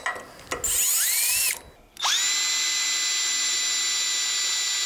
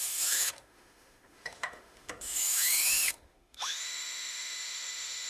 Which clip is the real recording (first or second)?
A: first